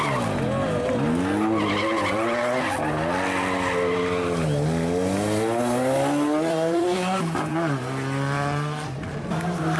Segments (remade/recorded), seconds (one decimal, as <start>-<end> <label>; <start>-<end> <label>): 0.0-6.5 recorded; 6.5-7.2 remade; 7.2-9.8 recorded